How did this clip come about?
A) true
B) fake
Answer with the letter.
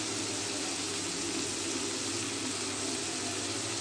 A